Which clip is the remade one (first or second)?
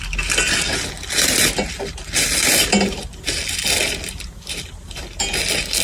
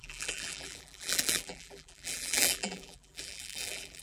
second